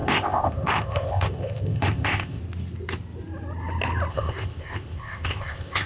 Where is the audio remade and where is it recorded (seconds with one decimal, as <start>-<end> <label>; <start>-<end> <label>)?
0.0-2.4 remade; 2.4-4.1 recorded; 4.1-5.9 remade